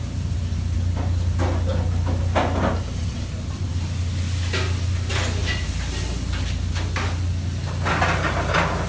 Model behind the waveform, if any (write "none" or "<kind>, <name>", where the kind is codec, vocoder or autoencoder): none